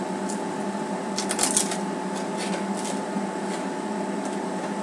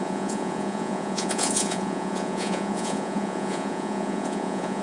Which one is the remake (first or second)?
second